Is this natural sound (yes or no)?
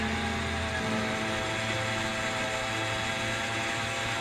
yes